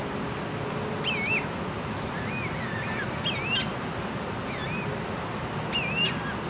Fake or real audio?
real